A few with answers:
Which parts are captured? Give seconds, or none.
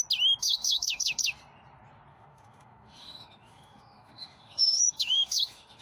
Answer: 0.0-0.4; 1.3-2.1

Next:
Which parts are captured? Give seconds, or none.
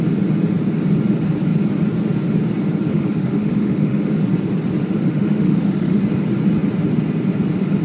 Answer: 0.0-2.9; 4.2-4.8; 6.0-7.8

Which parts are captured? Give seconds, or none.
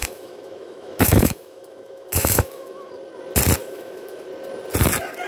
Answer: 2.9-3.6; 4.3-5.3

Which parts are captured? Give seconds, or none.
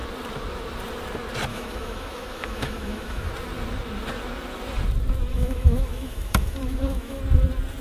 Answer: 0.0-1.5; 3.3-5.3; 7.2-7.8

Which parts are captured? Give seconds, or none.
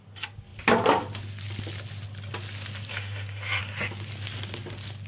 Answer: 0.0-2.9; 3.6-5.1